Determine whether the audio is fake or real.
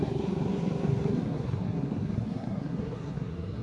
fake